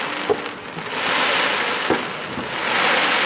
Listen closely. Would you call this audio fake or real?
real